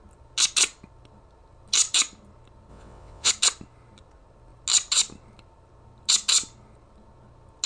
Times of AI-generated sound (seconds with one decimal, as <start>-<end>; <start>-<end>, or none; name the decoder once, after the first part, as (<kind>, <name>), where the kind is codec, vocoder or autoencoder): 2.7-3.3 (vocoder, WaveNeXt)